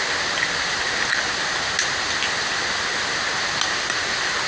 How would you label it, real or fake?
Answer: real